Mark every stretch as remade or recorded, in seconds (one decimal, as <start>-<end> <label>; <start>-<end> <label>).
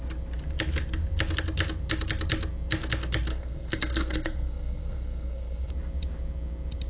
0.0-3.3 recorded; 3.3-5.7 remade; 5.7-6.9 recorded